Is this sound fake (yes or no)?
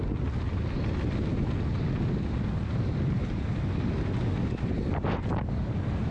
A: no